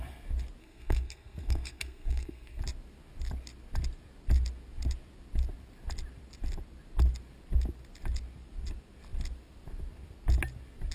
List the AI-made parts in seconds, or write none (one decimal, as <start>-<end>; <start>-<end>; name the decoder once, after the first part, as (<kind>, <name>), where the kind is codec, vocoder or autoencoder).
0.6-2.6 (codec, SNAC)

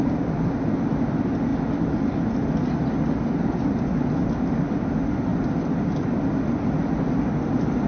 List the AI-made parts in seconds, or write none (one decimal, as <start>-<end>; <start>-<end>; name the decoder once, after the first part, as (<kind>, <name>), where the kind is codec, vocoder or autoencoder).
none